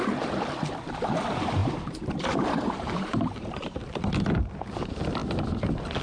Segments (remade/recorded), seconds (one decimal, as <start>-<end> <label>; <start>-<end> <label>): 0.0-1.6 recorded; 1.6-4.1 remade; 4.1-6.0 recorded